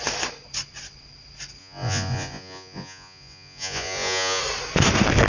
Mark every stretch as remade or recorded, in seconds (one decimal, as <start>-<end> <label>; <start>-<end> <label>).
0.0-1.6 recorded; 1.6-4.4 remade; 4.4-5.3 recorded